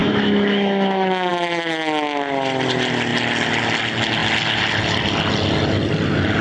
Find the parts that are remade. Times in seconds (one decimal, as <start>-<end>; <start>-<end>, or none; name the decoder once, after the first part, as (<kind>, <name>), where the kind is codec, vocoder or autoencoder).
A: 0.0-1.3 (autoencoder, DAC-VAE)